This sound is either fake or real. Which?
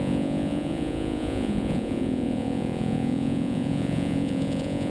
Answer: fake